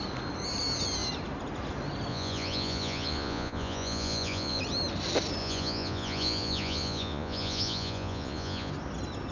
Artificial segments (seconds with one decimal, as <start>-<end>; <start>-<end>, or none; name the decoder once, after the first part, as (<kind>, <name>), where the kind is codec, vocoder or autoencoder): 2.1-4.6 (vocoder, Vocos); 5.4-8.7